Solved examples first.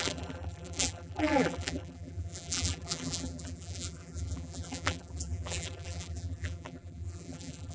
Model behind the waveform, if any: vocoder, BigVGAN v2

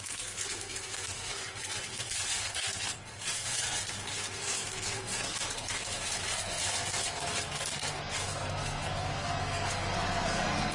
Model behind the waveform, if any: codec, SNAC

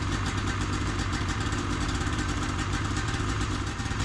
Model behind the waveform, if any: vocoder, BigVGAN v2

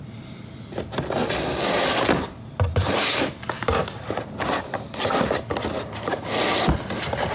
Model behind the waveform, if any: none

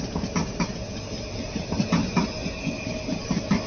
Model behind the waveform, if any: none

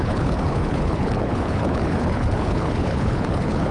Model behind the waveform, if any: codec, HILCodec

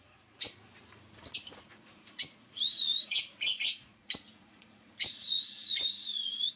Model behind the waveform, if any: vocoder, Vocos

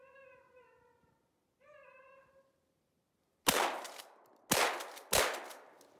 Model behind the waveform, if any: none